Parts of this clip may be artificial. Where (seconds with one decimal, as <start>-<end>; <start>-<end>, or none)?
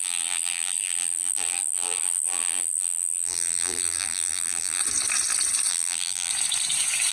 0.0-4.8; 5.7-6.3